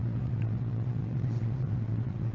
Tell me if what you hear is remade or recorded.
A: remade